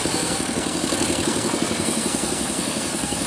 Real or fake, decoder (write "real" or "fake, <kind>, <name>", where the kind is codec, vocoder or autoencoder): fake, codec, SNAC